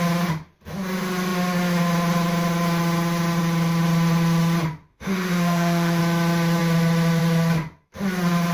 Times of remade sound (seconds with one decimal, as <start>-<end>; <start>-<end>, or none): 4.9-6.0